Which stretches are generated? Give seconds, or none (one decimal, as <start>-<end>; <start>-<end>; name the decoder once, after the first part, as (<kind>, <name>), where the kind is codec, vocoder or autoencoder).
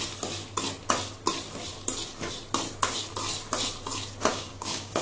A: 4.3-5.0 (codec, DAC)